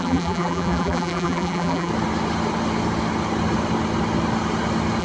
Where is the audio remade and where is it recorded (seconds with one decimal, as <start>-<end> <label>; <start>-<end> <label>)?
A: 0.0-1.9 remade; 1.9-5.0 recorded